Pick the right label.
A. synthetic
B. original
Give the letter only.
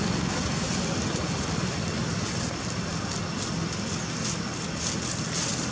B